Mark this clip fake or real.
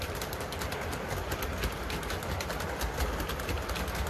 real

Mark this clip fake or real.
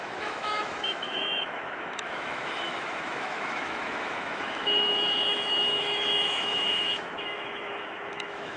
fake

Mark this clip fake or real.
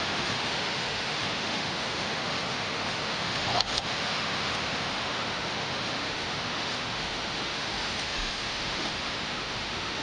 fake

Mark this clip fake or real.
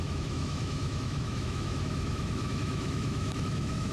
fake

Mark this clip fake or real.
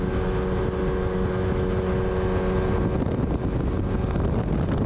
real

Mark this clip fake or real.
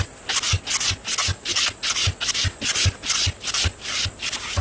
real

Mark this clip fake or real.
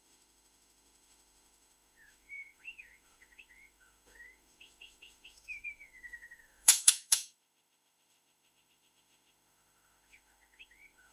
fake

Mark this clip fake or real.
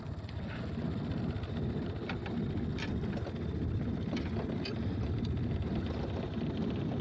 real